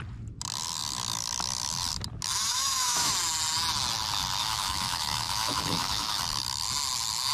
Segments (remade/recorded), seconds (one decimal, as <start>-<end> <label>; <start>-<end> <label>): 0.0-2.5 recorded; 2.5-3.1 remade; 3.1-4.4 recorded; 4.4-6.2 remade; 6.2-7.3 recorded